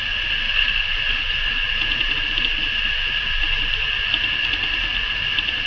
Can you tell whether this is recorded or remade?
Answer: recorded